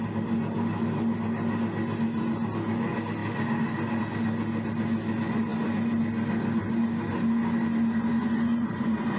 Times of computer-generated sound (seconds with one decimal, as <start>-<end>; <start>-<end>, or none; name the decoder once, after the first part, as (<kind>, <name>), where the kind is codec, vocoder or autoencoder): 8.1-9.2 (vocoder, Vocos)

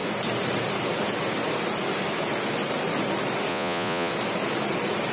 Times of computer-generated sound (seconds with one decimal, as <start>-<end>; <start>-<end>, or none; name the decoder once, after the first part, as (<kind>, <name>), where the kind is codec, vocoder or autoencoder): 3.5-4.1 (vocoder, Vocos)

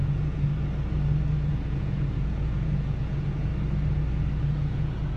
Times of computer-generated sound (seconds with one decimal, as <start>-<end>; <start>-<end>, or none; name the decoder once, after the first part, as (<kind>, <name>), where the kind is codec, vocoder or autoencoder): 0.0-0.5 (vocoder, Vocos); 1.5-3.5; 4.4-5.2

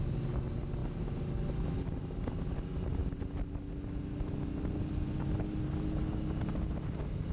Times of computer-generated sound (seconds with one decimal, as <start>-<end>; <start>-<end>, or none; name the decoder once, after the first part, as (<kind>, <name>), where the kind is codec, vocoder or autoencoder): none

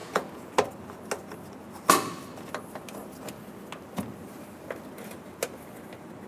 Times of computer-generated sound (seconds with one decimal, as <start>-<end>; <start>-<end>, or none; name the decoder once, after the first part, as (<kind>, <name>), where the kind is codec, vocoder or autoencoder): 0.0-0.5 (vocoder, Vocos)

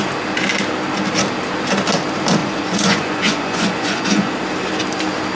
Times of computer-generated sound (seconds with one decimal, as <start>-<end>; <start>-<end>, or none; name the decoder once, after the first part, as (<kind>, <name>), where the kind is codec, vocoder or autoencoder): 2.4-4.3 (vocoder, Vocos)

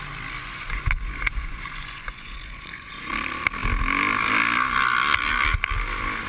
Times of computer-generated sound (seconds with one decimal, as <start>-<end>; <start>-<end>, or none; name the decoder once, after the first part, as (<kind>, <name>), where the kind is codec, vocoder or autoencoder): 0.4-3.1 (vocoder, Vocos)

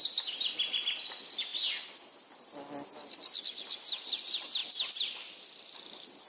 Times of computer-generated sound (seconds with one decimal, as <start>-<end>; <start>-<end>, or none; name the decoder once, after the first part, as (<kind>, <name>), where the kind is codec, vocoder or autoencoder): none